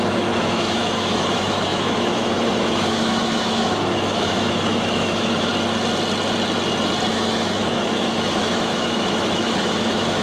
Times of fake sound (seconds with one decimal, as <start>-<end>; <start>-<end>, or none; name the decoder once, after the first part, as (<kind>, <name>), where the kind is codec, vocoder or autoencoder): 0.0-5.5 (autoencoder, DAC-VAE); 7.1-10.2